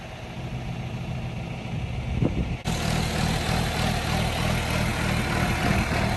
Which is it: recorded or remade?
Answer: recorded